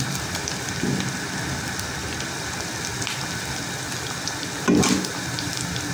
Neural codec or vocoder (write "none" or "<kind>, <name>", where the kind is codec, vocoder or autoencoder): none